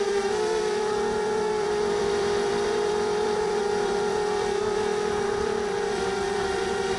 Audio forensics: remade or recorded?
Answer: remade